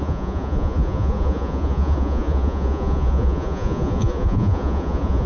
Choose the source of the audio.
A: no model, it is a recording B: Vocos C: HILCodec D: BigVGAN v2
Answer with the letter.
B